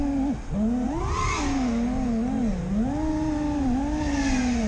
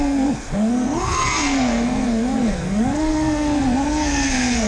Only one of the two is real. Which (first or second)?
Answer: first